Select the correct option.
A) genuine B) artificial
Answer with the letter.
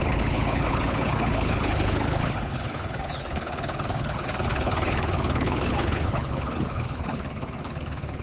B